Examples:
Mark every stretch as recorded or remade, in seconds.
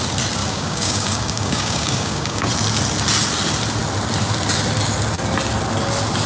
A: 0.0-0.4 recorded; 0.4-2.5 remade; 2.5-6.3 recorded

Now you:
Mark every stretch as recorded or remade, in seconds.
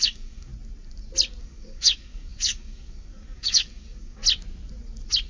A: 0.0-0.5 remade; 0.5-1.4 recorded; 1.4-4.2 remade; 4.2-5.3 recorded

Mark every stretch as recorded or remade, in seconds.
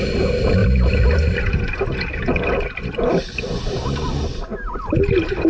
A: 0.0-5.5 recorded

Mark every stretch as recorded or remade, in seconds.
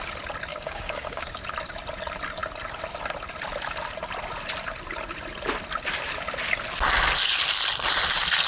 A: 0.0-0.5 recorded; 0.5-1.3 remade; 1.3-8.5 recorded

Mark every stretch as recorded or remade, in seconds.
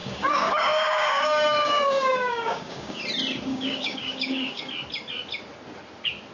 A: 0.0-3.0 remade; 3.0-3.5 recorded; 3.5-4.6 remade; 4.6-6.3 recorded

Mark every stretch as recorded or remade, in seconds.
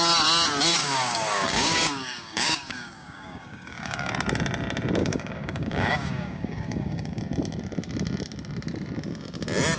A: 0.0-0.8 recorded; 0.8-4.1 remade; 4.1-5.0 recorded; 5.0-7.2 remade; 7.2-9.8 recorded